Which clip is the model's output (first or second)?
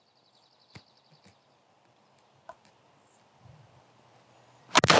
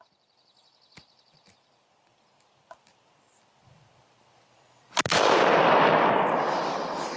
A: second